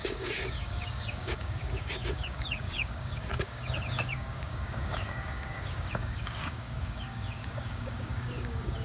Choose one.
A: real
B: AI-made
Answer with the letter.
B